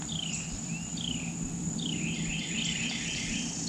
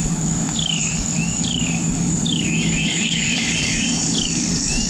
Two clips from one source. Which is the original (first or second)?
first